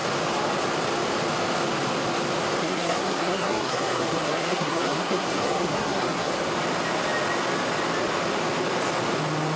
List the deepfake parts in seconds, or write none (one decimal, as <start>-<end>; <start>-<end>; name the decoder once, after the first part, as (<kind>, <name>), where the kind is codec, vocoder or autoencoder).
2.6-6.3 (codec, SNAC)